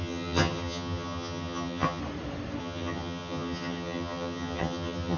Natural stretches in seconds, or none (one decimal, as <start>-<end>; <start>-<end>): 2.0-2.6